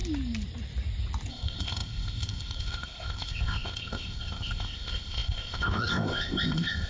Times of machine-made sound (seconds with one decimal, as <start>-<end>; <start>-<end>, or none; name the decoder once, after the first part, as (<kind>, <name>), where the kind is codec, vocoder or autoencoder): 1.3-6.9 (codec, ZipCodec)